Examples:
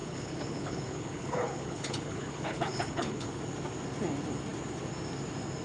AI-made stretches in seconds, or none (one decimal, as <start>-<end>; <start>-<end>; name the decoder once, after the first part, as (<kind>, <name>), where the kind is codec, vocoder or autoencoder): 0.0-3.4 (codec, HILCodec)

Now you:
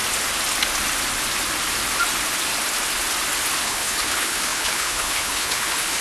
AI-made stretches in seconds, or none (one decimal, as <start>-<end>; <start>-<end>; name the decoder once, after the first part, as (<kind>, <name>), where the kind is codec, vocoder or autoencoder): 3.6-6.0 (codec, HILCodec)

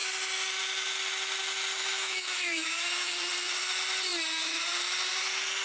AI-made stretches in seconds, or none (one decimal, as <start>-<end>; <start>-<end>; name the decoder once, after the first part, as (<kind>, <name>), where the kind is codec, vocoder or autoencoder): 1.8-3.1 (autoencoder, DAC-VAE)

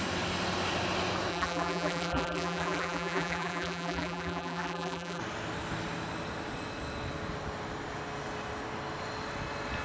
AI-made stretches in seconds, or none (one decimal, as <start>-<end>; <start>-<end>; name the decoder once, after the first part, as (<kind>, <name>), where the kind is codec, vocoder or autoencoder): 1.3-5.2 (vocoder, BigVGAN v2)